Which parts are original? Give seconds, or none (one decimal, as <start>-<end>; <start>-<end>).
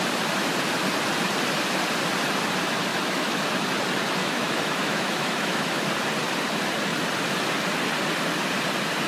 0.0-2.9; 3.5-4.2; 5.9-9.1